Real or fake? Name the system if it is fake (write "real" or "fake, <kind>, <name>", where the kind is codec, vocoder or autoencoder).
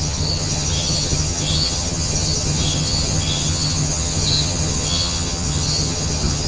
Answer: fake, vocoder, HiFi-GAN